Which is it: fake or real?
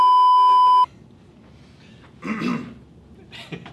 real